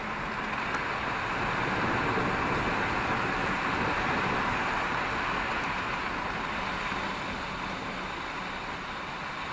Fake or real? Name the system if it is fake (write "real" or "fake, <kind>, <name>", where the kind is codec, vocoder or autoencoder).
real